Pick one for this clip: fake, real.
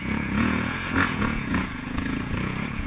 fake